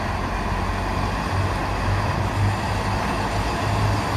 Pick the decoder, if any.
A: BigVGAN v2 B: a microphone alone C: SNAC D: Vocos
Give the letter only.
B